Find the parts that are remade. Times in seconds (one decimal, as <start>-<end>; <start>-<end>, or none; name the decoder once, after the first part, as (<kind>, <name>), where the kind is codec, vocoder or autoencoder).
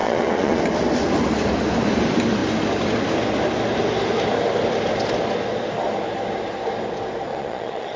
0.0-0.6 (vocoder, Vocos); 7.3-8.0